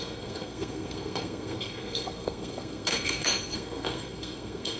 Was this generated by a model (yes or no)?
yes